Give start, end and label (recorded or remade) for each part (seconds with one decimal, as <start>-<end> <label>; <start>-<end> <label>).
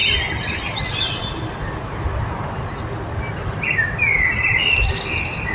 0.0-5.5 recorded